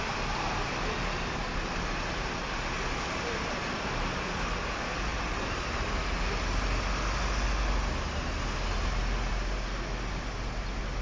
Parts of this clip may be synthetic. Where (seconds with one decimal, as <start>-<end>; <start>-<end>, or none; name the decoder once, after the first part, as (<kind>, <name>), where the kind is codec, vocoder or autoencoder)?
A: none